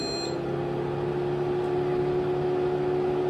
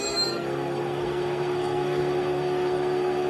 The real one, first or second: first